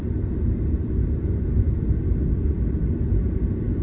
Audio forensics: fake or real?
real